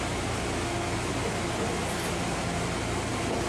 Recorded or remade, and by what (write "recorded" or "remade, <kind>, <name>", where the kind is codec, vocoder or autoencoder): recorded